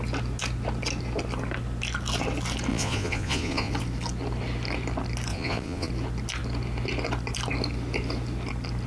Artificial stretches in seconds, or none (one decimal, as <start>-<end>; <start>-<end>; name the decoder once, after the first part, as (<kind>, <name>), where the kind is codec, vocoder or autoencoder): 2.7-3.7 (vocoder, Vocos); 5.3-5.9